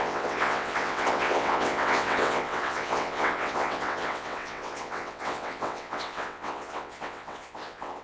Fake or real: fake